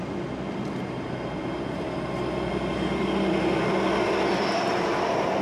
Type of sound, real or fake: real